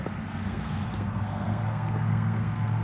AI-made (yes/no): yes